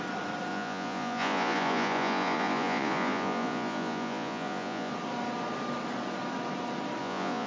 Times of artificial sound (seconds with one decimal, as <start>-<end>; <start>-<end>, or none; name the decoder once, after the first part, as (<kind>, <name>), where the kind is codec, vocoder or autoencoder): 0.5-4.9 (vocoder, Vocos); 7.0-7.5